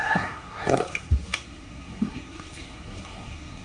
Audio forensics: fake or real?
fake